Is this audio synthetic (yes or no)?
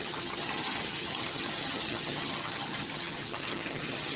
yes